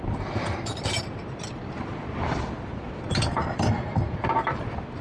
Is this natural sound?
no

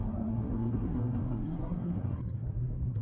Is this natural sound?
no